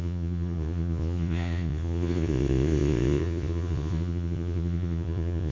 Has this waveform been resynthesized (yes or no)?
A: yes